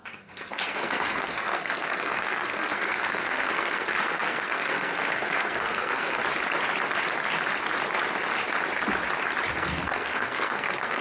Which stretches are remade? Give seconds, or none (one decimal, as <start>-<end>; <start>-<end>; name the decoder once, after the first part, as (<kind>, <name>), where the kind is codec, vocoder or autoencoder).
0.0-6.2 (codec, SNAC); 9.5-11.0